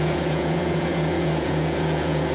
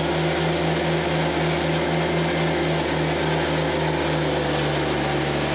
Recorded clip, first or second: second